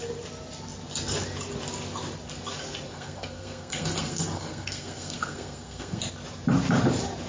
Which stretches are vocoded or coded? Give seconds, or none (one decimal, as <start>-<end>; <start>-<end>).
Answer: 2.9-6.0